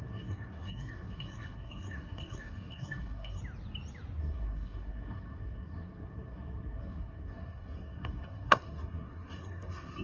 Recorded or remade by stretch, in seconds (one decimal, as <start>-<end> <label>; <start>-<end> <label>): 0.0-3.4 remade; 3.4-4.2 recorded; 4.2-10.0 remade